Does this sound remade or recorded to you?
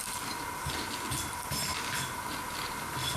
recorded